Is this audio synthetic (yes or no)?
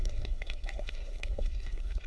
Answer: yes